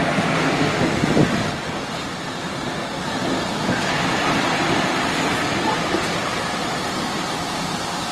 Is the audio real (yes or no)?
yes